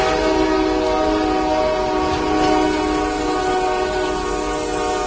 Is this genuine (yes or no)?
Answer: yes